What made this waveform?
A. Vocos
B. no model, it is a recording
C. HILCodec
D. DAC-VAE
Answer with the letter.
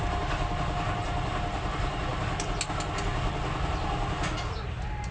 B